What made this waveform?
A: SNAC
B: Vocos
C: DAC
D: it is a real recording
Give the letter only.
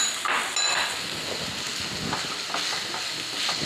D